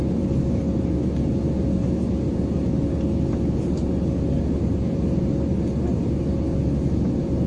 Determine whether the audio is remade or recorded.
recorded